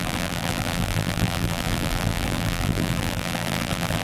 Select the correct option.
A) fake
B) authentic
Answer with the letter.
A